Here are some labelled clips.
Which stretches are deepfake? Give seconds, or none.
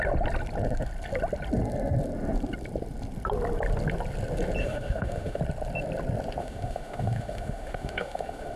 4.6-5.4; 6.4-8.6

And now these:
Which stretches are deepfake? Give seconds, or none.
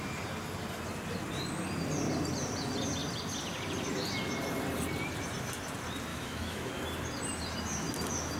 6.1-6.7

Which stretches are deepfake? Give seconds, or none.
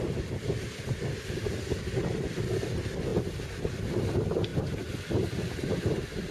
none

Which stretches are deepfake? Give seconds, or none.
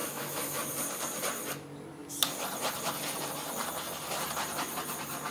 0.0-0.6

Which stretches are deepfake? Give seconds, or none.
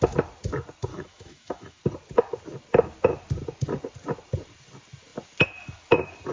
0.9-1.8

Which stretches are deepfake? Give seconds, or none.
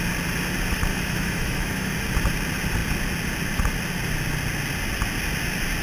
0.9-1.9